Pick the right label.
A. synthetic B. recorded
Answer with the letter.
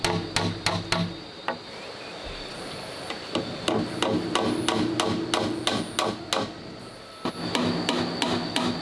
B